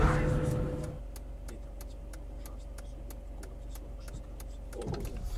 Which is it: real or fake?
real